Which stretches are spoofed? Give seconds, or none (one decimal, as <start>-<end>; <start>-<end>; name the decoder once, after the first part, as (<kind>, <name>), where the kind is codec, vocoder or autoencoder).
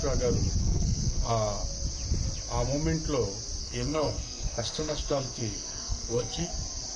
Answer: 0.6-1.3 (codec, SNAC); 3.6-6.5